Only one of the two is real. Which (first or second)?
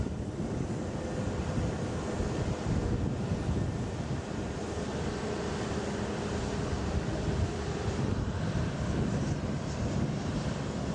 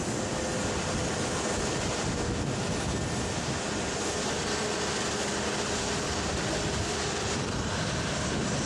second